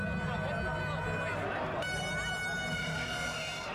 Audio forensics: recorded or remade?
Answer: recorded